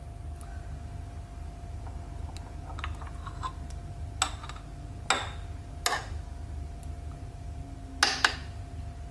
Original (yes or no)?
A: yes